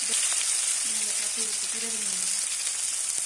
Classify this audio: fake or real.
real